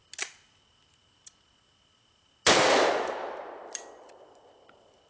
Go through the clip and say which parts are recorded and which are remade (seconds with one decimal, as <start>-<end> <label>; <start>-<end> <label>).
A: 0.0-5.1 recorded